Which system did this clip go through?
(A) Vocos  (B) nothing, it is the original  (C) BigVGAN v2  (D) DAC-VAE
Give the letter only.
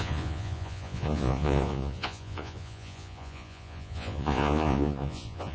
A